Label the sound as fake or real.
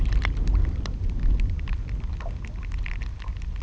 real